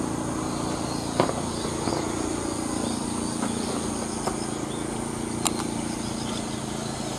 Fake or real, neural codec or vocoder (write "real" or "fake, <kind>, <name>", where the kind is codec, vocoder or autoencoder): real